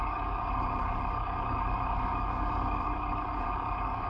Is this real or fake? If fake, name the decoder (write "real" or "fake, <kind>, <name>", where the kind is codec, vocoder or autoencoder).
fake, codec, DAC